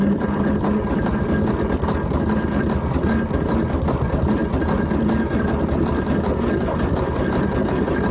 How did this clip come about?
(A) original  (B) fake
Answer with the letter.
A